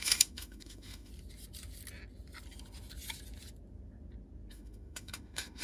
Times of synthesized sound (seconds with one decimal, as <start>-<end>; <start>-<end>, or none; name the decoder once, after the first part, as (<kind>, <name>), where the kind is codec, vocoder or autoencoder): 0.0-1.1 (autoencoder, DAC-VAE); 4.5-5.6